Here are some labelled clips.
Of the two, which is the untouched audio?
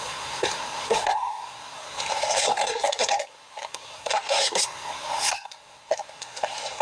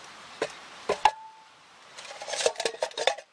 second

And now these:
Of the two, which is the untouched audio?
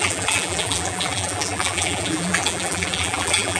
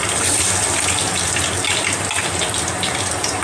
second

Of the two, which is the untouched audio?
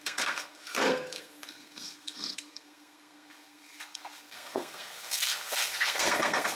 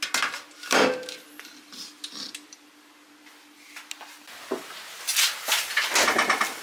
second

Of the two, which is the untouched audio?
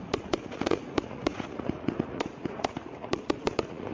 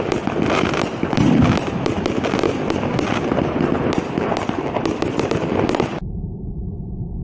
second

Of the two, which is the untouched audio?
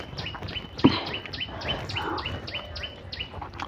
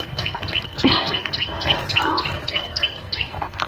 first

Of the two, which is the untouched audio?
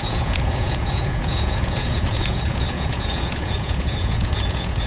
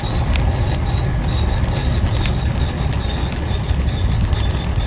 second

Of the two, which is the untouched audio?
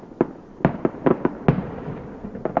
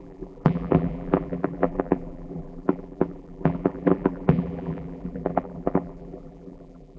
first